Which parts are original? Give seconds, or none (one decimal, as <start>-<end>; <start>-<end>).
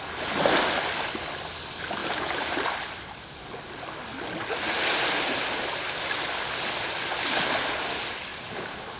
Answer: 0.0-2.0; 3.4-8.3